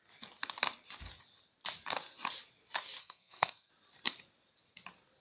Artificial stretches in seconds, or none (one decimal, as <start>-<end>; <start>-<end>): 3.0-3.7